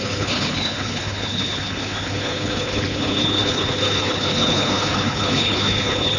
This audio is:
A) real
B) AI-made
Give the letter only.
B